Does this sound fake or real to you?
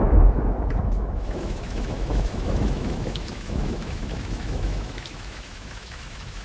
fake